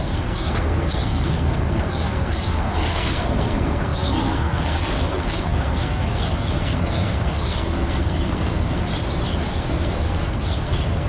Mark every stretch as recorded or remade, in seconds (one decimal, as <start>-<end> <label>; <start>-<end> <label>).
0.0-8.9 remade; 8.9-9.5 recorded; 9.5-11.1 remade

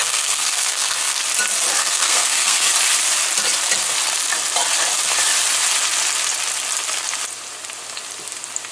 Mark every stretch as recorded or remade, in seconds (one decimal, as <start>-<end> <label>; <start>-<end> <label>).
0.0-1.2 remade; 1.2-1.8 recorded; 1.8-2.7 remade; 2.7-8.7 recorded

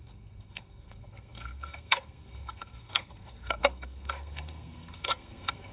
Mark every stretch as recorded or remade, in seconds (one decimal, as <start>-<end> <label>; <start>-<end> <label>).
0.0-5.7 remade

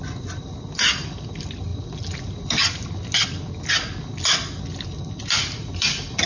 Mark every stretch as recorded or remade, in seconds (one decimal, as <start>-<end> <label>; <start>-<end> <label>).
0.0-6.2 recorded

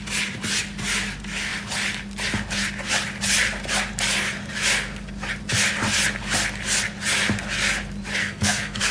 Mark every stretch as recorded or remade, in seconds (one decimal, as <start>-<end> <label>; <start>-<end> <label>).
0.0-8.2 recorded; 8.2-8.9 remade